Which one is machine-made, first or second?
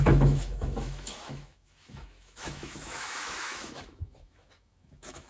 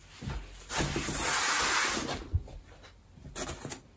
first